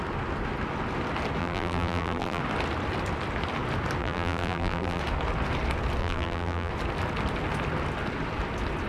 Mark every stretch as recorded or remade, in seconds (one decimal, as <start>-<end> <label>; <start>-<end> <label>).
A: 0.0-1.4 recorded; 1.4-2.4 remade; 2.4-4.0 recorded; 4.0-5.0 remade; 5.0-6.0 recorded; 6.0-6.7 remade; 6.7-8.9 recorded